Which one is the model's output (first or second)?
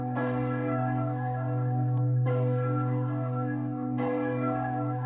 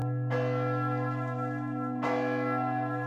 first